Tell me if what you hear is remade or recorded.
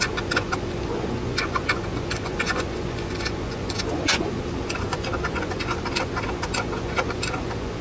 remade